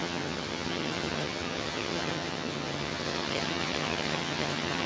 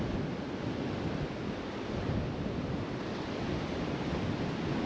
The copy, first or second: first